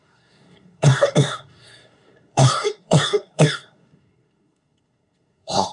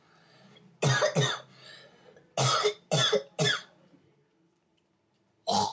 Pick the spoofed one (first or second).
first